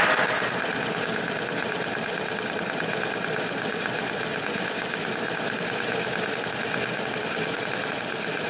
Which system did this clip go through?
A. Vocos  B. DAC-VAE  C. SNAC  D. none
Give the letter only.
D